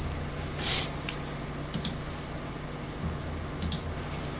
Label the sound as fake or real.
real